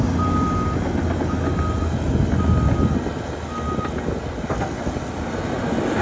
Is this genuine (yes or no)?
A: yes